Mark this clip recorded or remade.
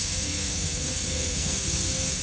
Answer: remade